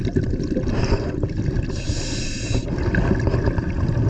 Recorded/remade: recorded